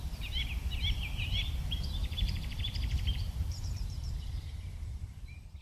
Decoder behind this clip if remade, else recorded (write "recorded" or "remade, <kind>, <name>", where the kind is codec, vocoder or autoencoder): remade, vocoder, BigVGAN v2